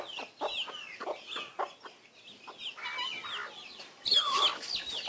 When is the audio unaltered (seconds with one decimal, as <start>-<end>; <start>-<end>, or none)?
0.0-5.1